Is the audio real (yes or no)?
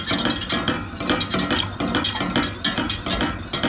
yes